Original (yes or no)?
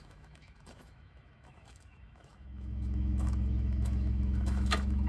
no